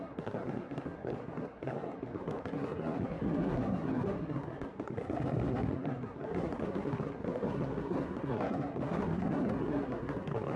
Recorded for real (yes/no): no